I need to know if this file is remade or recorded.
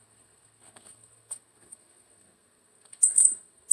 remade